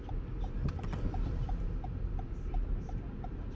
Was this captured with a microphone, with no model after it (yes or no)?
yes